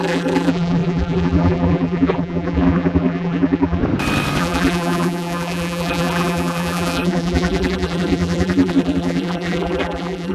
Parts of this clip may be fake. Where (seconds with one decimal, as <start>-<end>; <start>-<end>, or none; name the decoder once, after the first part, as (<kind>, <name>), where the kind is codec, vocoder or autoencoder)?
0.0-3.8 (vocoder, BigVGAN v2); 4.4-10.3